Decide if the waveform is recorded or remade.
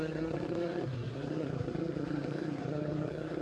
remade